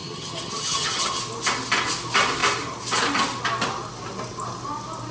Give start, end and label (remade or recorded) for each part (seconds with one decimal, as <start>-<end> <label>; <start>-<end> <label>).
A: 0.0-1.2 remade; 1.2-5.1 recorded